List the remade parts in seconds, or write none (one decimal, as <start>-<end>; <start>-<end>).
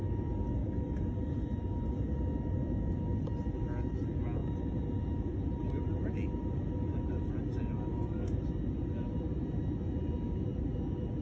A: 0.6-1.1; 7.9-8.4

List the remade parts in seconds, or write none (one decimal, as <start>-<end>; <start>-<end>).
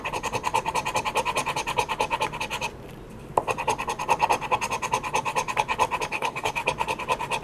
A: 6.1-6.6